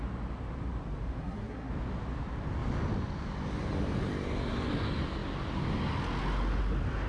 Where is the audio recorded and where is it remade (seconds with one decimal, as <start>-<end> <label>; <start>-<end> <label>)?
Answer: 0.0-1.2 recorded; 1.2-1.7 remade; 1.7-7.1 recorded